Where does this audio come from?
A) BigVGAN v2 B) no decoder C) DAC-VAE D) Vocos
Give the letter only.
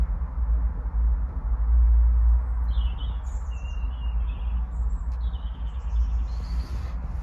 B